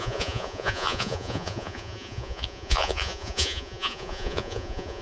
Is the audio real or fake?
fake